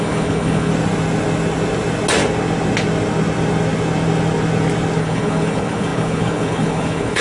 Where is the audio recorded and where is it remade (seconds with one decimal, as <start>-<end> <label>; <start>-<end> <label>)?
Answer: 0.0-0.7 remade; 0.7-5.0 recorded; 5.0-7.2 remade